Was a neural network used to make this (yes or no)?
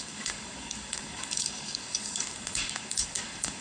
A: yes